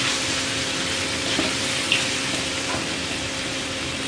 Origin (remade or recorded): recorded